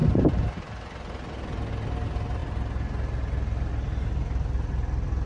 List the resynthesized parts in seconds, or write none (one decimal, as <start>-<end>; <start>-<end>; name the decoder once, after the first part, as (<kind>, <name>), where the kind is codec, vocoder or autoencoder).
0.0-1.7 (vocoder, BigVGAN v2)